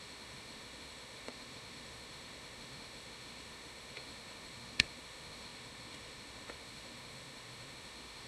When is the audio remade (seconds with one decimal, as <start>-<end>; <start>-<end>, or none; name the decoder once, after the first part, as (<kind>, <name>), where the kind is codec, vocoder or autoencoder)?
0.0-8.3 (autoencoder, DAC-VAE)